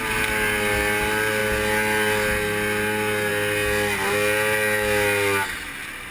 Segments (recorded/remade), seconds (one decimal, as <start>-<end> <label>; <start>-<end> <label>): 0.0-6.1 recorded